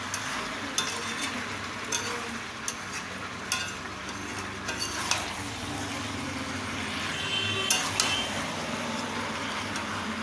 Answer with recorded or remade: recorded